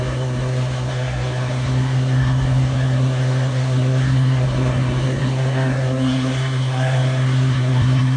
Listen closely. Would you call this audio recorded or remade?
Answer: remade